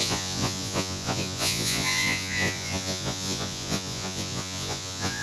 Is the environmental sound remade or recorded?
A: remade